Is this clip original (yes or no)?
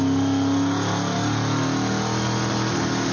yes